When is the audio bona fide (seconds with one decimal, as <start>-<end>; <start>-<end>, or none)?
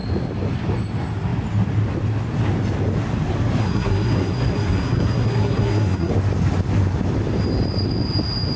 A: 0.0-3.6; 6.1-8.6